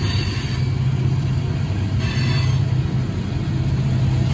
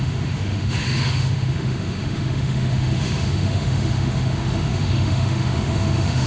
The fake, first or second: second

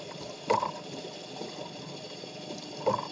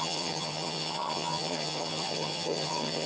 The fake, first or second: second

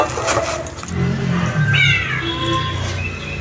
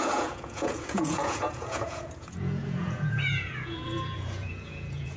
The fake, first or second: second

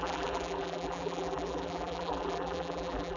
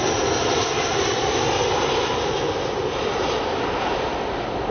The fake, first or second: first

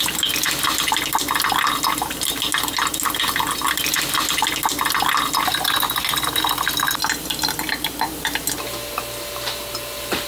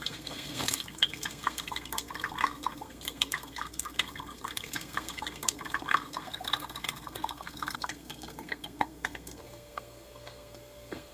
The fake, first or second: second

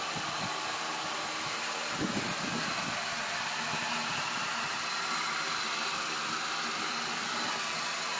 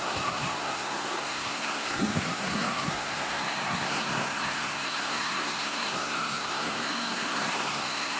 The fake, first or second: second